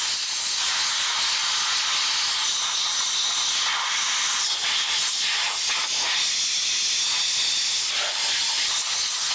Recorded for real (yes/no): yes